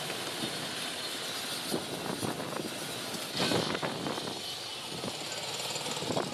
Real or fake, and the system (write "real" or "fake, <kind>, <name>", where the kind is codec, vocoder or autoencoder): real